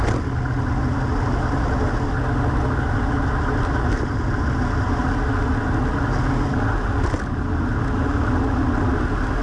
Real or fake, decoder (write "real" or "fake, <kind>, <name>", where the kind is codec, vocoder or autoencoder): real